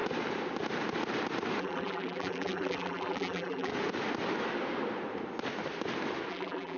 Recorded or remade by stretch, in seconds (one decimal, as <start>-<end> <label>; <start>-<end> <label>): 0.0-1.6 recorded; 1.6-3.7 remade; 3.7-6.3 recorded; 6.3-6.8 remade